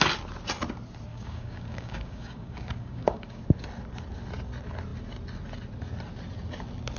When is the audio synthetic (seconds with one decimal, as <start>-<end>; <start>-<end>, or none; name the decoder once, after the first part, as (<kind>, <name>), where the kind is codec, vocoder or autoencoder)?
1.1-3.4 (codec, DAC)